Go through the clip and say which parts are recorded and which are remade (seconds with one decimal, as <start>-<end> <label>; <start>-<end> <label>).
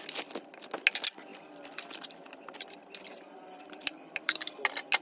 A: 0.0-1.3 recorded; 1.3-4.3 remade; 4.3-5.0 recorded